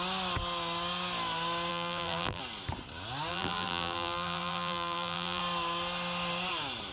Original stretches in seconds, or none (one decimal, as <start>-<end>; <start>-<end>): 0.0-1.7; 2.4-3.3; 5.4-6.9